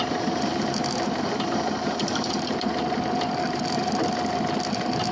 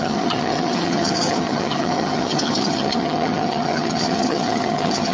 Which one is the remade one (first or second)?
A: second